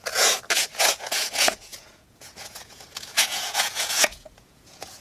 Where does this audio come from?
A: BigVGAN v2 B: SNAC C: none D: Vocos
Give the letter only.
D